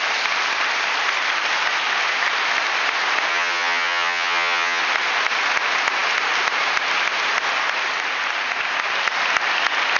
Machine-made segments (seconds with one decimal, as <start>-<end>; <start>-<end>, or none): 3.3-4.8